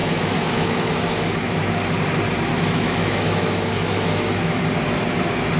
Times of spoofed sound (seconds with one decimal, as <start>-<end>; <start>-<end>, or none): 0.0-0.9; 2.5-4.6